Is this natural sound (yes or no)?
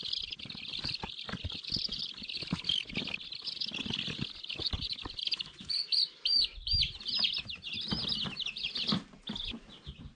no